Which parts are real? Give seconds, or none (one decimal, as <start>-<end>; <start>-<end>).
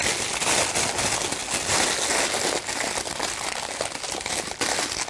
0.0-5.1